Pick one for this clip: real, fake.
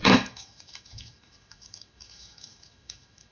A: fake